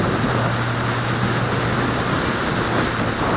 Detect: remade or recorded recorded